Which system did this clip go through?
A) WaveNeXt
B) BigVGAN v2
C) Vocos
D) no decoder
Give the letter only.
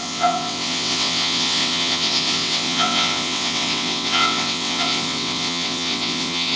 A